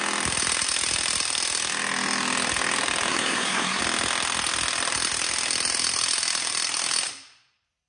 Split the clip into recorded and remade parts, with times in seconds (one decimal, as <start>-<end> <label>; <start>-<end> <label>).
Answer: 0.0-3.1 recorded; 3.1-3.8 remade; 3.8-7.9 recorded